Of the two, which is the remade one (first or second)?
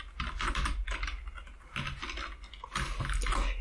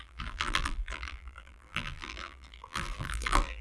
second